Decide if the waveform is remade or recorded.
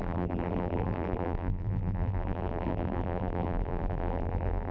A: remade